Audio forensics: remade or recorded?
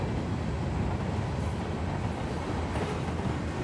recorded